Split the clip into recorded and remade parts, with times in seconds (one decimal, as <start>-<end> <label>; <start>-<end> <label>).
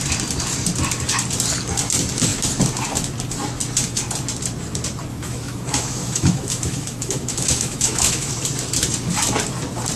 0.0-5.1 recorded; 5.1-8.3 remade; 8.3-10.0 recorded